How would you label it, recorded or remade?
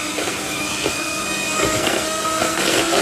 remade